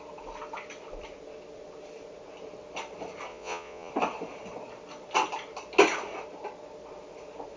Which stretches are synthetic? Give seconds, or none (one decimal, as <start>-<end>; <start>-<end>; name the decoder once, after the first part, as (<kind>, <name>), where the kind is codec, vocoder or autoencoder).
3.3-3.9 (vocoder, Vocos)